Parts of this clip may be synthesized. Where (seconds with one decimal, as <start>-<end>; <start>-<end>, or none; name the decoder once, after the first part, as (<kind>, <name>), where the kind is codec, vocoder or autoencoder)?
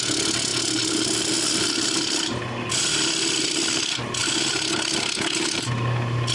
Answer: none